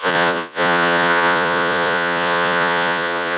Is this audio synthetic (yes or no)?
yes